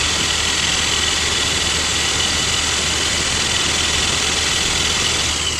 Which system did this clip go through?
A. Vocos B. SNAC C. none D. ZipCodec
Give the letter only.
C